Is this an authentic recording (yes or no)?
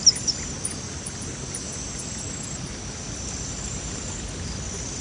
yes